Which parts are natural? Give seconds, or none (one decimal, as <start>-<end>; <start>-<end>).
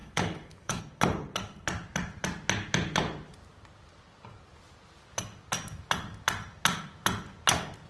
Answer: 0.8-7.9